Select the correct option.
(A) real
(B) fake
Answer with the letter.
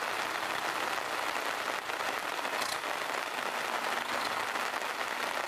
A